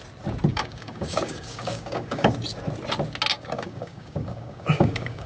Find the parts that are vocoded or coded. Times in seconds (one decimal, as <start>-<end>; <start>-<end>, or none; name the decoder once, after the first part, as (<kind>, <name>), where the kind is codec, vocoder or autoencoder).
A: 0.5-2.3 (codec, DAC); 3.3-5.3